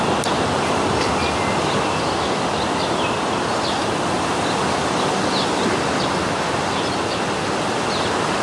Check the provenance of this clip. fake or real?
real